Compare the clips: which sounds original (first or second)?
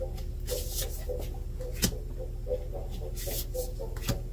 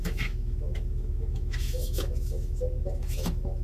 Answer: first